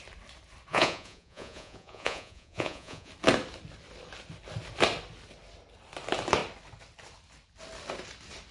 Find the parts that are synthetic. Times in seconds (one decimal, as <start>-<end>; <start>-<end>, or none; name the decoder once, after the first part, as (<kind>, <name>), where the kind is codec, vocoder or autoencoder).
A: 0.7-3.1 (vocoder, Vocos)